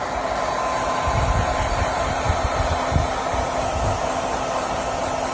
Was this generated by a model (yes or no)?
no